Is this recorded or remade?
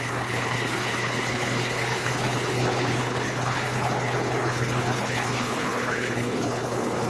remade